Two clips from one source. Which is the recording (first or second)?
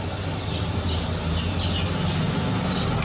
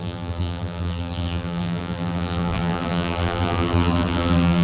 first